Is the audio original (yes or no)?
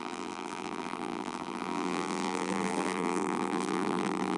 no